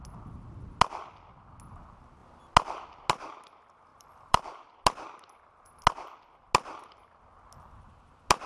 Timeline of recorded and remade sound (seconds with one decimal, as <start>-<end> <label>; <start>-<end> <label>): 0.0-3.9 recorded; 3.9-4.7 remade; 4.7-8.5 recorded